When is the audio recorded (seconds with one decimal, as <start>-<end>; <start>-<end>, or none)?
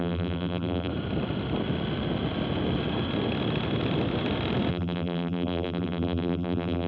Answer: 0.9-4.7